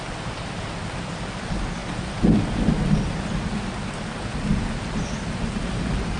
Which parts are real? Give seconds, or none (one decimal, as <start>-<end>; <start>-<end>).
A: 0.0-6.2